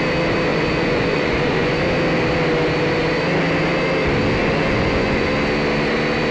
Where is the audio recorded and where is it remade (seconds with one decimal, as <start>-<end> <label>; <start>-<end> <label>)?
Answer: 0.0-0.5 recorded; 0.5-1.8 remade; 1.8-4.4 recorded; 4.4-5.3 remade; 5.3-6.3 recorded